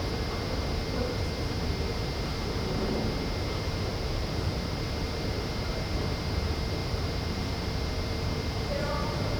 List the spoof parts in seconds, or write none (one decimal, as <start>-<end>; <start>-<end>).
3.9-4.8; 6.8-7.8